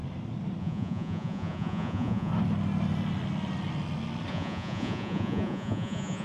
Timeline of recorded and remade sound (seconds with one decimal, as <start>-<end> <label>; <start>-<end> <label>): 0.0-0.6 recorded; 0.6-2.3 remade; 2.3-4.3 recorded; 4.3-6.2 remade